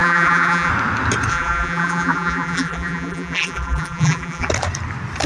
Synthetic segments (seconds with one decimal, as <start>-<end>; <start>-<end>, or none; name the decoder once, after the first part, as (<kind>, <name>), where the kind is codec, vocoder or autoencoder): 0.0-0.7 (vocoder, BigVGAN v2); 1.3-4.5